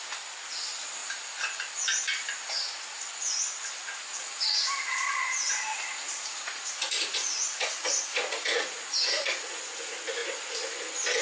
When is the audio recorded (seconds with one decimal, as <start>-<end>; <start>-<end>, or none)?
0.0-4.2; 9.4-11.2